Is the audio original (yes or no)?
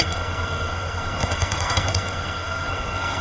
no